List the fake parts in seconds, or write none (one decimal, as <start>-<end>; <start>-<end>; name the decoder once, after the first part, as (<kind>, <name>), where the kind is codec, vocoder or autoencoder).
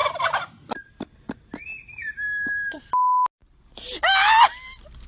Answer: 0.0-0.6 (vocoder, BigVGAN v2); 1.7-2.9